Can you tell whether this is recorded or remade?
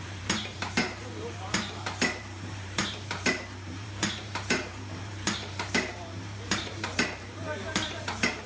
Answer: remade